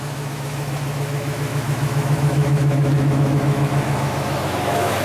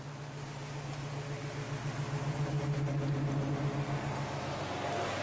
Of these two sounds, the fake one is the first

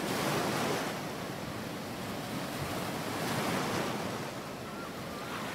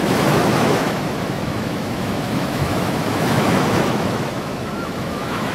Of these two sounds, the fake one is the second